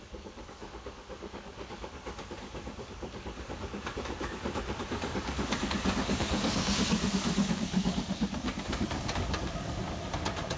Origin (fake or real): fake